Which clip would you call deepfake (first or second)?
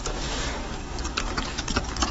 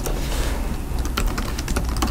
first